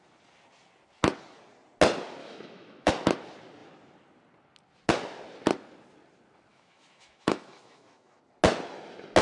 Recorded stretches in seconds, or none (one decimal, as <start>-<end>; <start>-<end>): 0.0-2.2; 2.9-6.5; 8.2-9.2